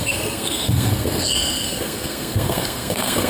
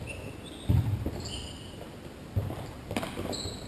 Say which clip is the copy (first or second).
first